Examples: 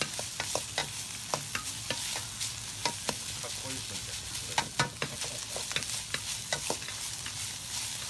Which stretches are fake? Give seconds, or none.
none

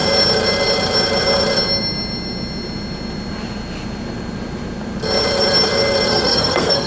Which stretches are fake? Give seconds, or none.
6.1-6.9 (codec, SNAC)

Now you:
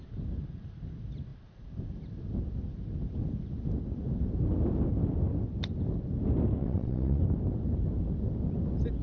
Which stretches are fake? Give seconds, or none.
6.6-7.2 (vocoder, WaveNeXt)

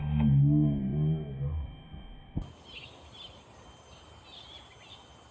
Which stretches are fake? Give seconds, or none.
none

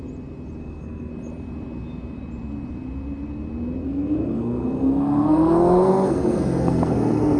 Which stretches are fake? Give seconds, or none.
0.6-1.1 (codec, SNAC); 3.8-7.4

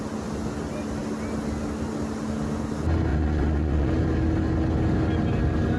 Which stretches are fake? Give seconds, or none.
3.1-3.9 (vocoder, Vocos)

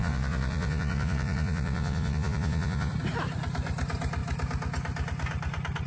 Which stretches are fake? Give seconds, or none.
0.0-2.9 (vocoder, Vocos)

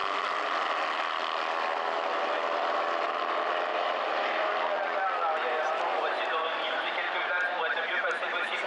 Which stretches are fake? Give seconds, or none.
3.7-4.5 (vocoder, BigVGAN v2); 5.4-8.7